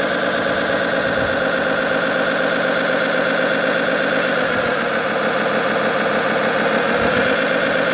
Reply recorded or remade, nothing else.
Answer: recorded